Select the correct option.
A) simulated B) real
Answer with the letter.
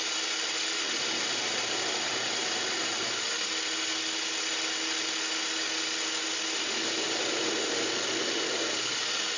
B